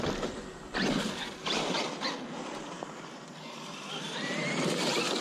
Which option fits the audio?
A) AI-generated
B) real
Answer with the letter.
B